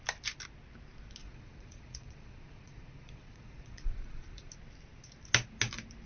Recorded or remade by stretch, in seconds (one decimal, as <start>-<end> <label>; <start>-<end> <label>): 0.0-1.2 recorded; 1.2-4.5 remade; 4.5-6.1 recorded